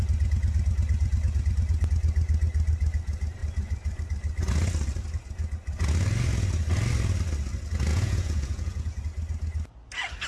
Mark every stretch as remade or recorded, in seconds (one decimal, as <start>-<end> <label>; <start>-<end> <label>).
0.0-7.9 recorded; 7.9-9.0 remade; 9.0-10.3 recorded